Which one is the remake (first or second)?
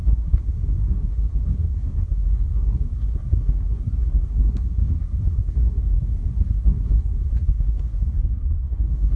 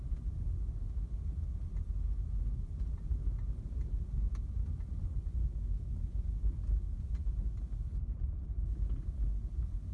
first